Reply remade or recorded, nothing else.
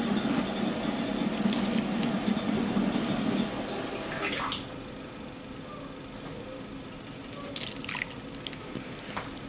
recorded